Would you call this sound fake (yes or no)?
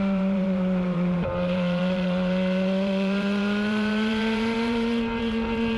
yes